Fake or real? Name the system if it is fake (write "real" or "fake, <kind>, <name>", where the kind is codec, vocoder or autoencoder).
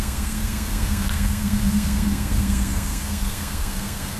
fake, codec, SNAC